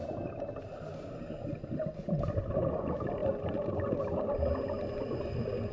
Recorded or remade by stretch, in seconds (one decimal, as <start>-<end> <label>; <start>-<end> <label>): 0.0-5.7 recorded